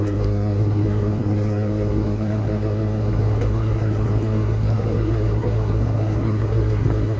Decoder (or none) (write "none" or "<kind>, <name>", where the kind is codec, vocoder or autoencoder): codec, SNAC